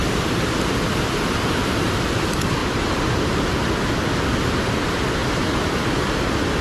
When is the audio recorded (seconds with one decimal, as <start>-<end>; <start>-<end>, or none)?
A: 0.9-2.6; 3.3-6.6